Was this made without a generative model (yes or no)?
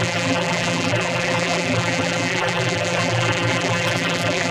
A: no